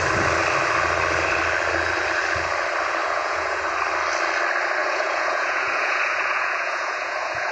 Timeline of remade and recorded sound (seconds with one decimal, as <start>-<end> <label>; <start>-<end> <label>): 0.0-3.0 recorded; 3.0-3.6 remade; 3.6-4.8 recorded; 4.8-7.5 remade